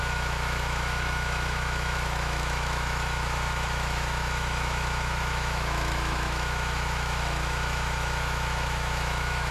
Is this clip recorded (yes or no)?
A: no